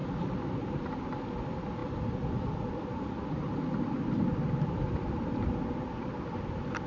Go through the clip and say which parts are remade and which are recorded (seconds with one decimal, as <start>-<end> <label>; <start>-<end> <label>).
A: 0.0-0.8 remade; 0.8-1.8 recorded; 1.8-5.5 remade; 5.5-6.9 recorded